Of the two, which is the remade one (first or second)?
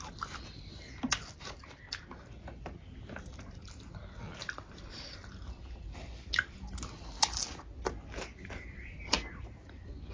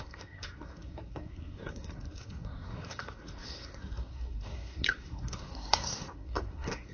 second